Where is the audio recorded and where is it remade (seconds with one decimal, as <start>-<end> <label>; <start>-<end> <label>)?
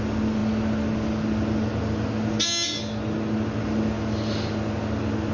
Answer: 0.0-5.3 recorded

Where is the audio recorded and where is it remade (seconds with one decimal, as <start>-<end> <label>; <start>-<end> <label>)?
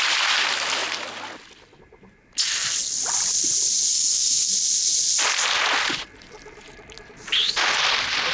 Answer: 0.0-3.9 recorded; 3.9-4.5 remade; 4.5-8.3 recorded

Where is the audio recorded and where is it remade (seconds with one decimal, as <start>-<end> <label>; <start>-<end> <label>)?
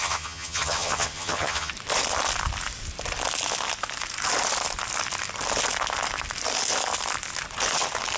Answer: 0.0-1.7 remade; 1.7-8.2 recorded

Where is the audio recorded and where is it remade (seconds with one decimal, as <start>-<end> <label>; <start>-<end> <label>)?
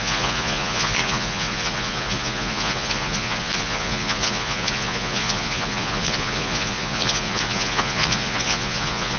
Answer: 0.0-9.2 remade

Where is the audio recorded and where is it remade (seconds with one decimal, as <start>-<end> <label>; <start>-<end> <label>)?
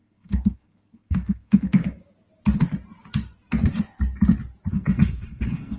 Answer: 0.0-1.8 remade; 1.8-4.7 recorded; 4.7-5.8 remade